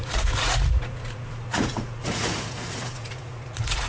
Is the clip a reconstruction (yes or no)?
yes